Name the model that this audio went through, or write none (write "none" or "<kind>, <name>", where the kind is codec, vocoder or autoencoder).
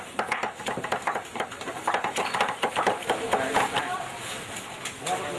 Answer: none